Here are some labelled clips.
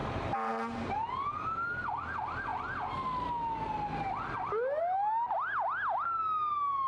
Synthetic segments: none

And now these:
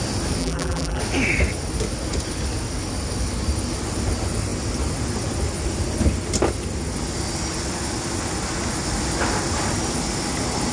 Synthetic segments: 0.4-1.0 (vocoder, BigVGAN v2)

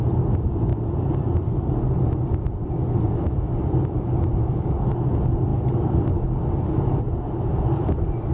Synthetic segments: none

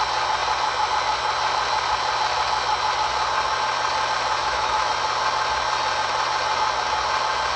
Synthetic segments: 4.4-4.9 (autoencoder, DAC-VAE)